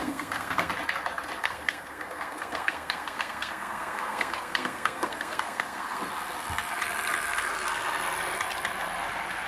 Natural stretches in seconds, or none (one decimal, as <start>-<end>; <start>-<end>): 0.7-1.4; 6.0-9.5